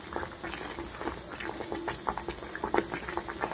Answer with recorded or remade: recorded